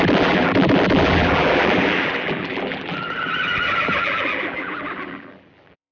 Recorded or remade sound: remade